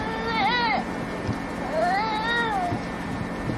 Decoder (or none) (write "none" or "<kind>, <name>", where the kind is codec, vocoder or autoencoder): none